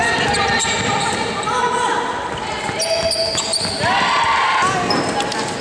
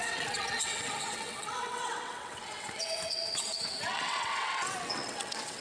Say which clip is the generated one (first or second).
second